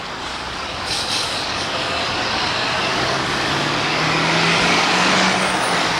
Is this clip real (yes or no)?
no